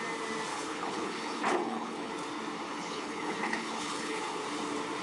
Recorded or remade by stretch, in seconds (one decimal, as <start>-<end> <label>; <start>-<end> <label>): 0.0-0.5 recorded; 0.5-2.1 remade; 2.1-2.7 recorded; 2.7-4.4 remade; 4.4-5.0 recorded